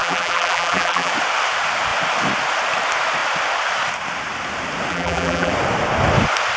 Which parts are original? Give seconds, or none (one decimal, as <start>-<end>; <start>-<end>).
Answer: 1.1-4.9; 5.5-6.6